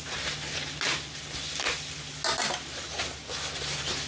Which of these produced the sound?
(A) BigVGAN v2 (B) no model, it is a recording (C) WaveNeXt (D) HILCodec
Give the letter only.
B